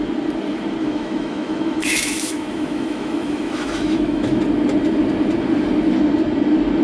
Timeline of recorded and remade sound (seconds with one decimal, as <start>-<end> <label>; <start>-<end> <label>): 0.0-0.8 recorded; 0.8-4.4 remade; 4.4-6.8 recorded